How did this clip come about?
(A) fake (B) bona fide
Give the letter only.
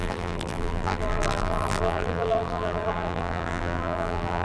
A